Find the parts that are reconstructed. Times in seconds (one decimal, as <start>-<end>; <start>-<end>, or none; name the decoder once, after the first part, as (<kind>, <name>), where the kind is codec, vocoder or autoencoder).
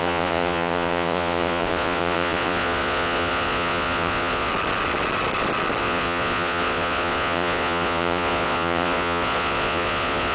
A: 0.0-4.5 (vocoder, Vocos); 5.8-10.3